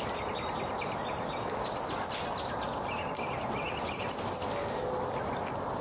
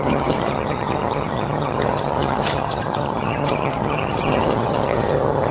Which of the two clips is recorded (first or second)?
first